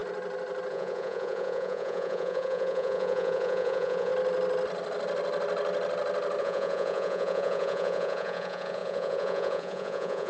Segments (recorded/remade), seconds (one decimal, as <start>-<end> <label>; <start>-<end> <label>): 0.0-0.7 recorded; 0.7-4.1 remade; 4.1-6.4 recorded; 6.4-10.3 remade